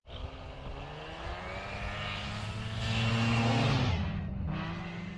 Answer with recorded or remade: recorded